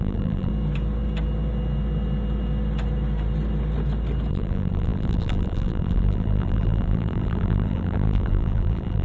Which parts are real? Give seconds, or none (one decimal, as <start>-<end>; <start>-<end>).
0.5-4.3

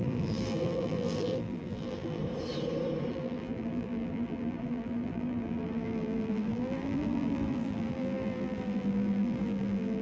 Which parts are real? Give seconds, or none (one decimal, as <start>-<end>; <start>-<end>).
2.2-3.1

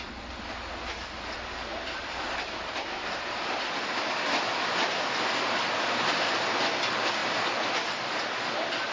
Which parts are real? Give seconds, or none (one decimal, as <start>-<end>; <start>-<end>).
0.0-1.7; 6.5-7.2